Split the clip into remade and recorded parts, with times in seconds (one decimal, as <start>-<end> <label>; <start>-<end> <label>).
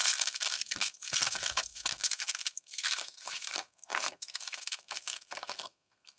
0.0-6.2 remade